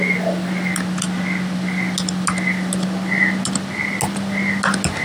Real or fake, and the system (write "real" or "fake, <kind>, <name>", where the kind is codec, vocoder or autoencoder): real